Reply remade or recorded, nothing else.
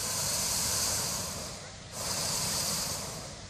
remade